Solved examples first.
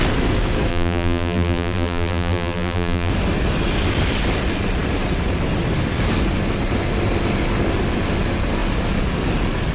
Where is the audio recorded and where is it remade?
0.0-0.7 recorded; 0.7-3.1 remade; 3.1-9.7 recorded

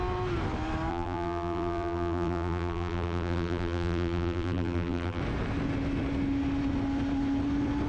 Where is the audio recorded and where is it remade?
0.0-0.9 recorded; 0.9-5.2 remade; 5.2-7.9 recorded

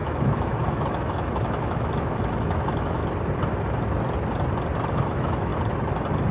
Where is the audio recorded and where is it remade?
0.0-3.0 remade; 3.0-4.9 recorded; 4.9-5.5 remade; 5.5-6.3 recorded

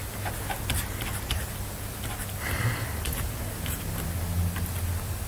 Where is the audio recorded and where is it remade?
0.0-5.3 recorded

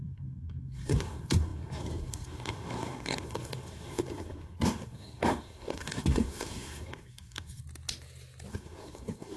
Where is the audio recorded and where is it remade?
0.0-7.6 remade; 7.6-8.5 recorded; 8.5-9.4 remade

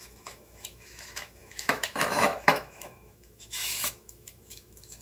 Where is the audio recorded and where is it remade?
0.0-5.0 remade